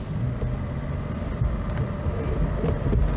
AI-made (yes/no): no